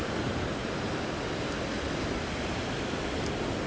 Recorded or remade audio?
recorded